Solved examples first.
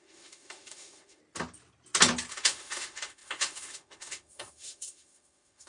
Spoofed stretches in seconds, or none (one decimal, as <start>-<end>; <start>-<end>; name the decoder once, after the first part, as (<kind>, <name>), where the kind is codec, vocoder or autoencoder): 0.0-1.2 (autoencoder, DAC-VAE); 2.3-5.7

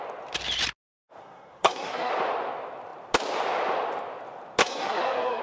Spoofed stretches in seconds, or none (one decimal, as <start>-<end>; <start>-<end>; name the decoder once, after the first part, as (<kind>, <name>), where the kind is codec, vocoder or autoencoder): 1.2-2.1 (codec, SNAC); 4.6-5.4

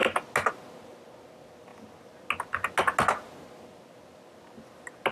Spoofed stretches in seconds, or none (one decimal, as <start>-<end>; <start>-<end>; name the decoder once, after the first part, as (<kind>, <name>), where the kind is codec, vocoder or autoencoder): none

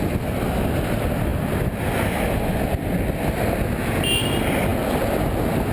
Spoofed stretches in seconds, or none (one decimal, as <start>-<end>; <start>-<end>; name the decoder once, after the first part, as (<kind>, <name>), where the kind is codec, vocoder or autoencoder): none

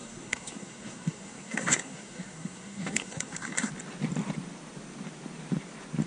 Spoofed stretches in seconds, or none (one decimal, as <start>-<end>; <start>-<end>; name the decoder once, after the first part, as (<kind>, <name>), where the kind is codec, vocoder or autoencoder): 0.0-3.7 (codec, SNAC)